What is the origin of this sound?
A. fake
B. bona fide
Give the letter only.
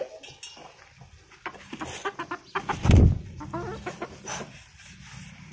B